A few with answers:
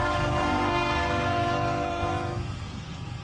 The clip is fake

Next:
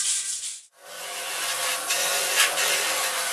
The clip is fake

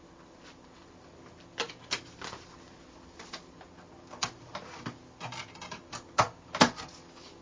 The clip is real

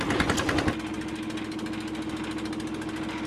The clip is real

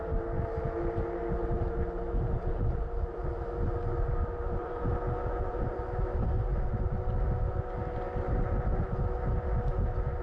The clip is real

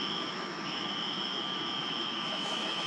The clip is fake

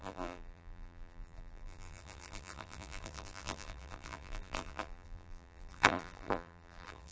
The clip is fake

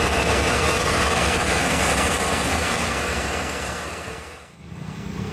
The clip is fake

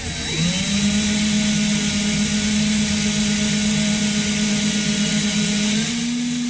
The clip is real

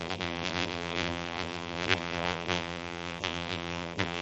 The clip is fake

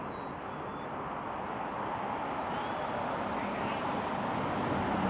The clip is real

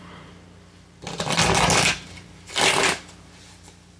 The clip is real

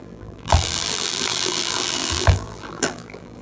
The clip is fake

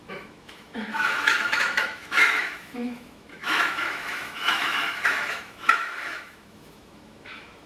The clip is fake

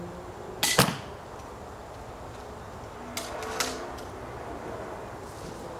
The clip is real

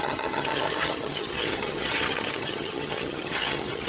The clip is fake